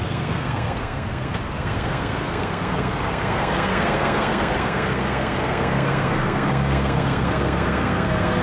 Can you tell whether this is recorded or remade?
remade